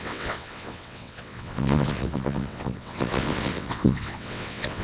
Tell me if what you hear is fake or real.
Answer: fake